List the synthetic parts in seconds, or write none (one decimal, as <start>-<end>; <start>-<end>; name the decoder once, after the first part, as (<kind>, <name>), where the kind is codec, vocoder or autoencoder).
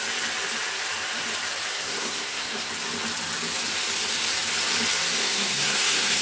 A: 1.7-2.7 (codec, SNAC); 5.2-6.2